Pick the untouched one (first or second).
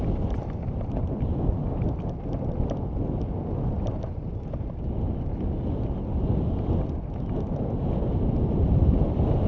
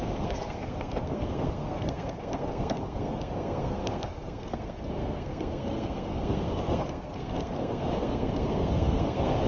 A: first